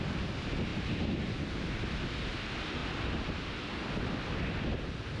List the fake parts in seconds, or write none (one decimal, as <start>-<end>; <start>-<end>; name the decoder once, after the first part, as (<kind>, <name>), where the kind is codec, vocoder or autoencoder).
none